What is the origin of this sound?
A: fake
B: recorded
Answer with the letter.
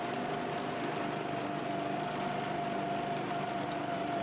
B